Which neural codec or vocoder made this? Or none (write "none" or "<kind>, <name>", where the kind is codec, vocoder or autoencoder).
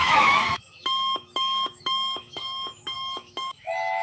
autoencoder, DAC-VAE